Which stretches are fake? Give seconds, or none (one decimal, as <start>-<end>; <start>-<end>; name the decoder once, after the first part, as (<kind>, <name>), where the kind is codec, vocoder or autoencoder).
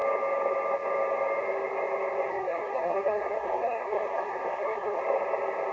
2.3-5.0 (codec, SNAC)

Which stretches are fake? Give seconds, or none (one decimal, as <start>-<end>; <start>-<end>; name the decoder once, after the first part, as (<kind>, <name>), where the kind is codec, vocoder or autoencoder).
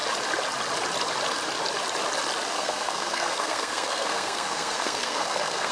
2.5-5.7 (codec, SNAC)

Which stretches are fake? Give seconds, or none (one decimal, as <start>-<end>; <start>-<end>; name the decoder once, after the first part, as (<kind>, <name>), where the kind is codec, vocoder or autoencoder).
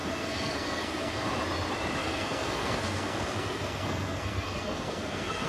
0.0-1.2 (codec, SNAC); 2.0-5.5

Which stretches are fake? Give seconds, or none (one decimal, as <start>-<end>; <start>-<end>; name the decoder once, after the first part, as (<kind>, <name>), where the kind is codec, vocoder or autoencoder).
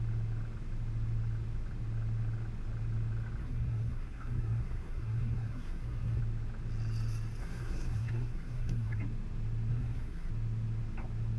3.4-6.2 (codec, SNAC); 7.4-9.0; 9.7-10.3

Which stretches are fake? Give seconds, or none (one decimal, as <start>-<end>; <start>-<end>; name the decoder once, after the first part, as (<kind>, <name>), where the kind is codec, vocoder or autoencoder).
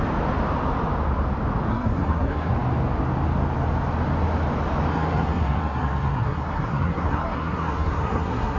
1.7-2.5 (codec, SNAC); 4.9-8.6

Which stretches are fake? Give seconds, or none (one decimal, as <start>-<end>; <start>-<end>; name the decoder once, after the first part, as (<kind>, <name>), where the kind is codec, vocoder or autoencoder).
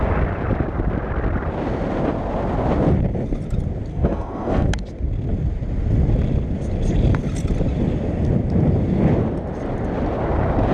3.9-4.7 (codec, SNAC)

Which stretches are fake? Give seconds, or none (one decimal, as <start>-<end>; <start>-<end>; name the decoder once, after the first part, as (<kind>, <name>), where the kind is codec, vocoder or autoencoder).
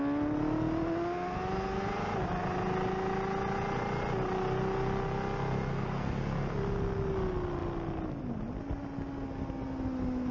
5.7-6.2 (codec, SNAC)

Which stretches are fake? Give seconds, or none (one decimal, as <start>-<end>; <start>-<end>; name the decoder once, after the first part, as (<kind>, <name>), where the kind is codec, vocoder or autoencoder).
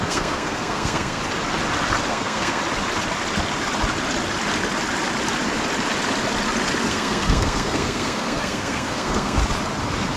0.0-1.2 (codec, SNAC); 2.1-2.6; 6.9-9.4